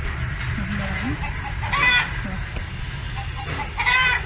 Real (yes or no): yes